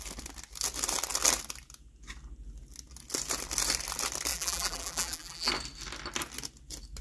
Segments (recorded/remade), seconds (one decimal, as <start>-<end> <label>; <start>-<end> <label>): 0.0-4.3 recorded; 4.3-5.5 remade; 5.5-7.0 recorded